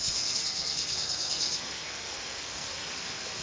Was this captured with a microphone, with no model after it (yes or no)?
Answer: no